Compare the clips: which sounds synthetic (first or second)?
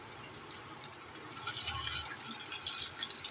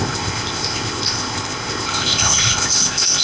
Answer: second